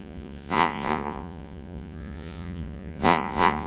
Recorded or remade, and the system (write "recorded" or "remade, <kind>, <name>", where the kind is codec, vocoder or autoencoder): remade, vocoder, Vocos